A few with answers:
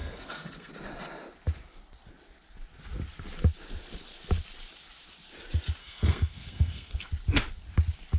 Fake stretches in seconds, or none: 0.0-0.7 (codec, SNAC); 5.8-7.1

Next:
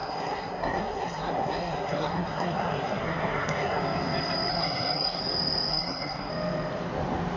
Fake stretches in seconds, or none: 0.0-3.8 (codec, SNAC); 4.5-5.2; 5.7-6.3

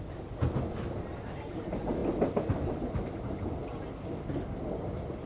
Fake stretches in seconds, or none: none

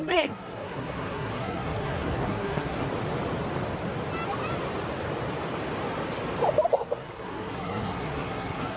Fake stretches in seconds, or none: 0.0-2.9 (codec, SNAC); 6.7-8.8

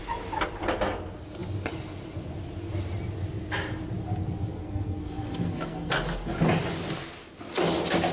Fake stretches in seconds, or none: 4.6-5.9 (codec, SNAC)

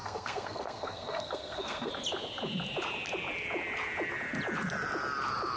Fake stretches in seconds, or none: 0.0-1.9 (codec, SNAC)

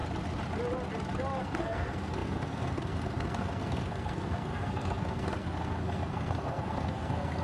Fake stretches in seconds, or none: 1.4-7.4 (codec, SNAC)

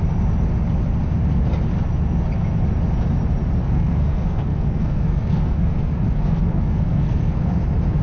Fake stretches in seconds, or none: 3.6-7.6 (codec, SNAC)